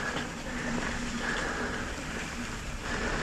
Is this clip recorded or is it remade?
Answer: recorded